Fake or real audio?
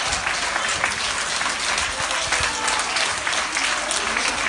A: real